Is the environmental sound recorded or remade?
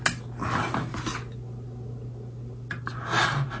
recorded